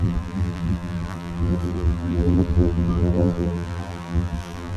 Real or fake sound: fake